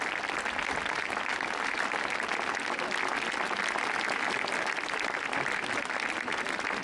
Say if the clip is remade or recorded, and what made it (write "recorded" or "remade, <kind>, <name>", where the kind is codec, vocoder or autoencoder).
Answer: recorded